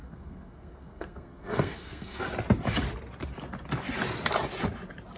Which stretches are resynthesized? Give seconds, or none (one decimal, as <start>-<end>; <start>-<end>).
0.0-2.2